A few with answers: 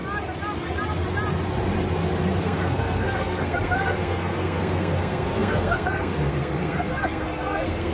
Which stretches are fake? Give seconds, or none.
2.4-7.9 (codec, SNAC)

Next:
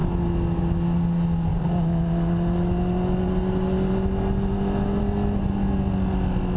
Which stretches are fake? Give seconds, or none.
none

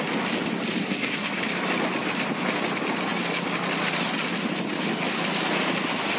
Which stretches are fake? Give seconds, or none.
0.8-1.4 (codec, SNAC)